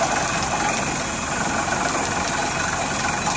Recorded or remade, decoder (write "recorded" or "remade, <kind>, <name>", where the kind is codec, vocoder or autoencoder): recorded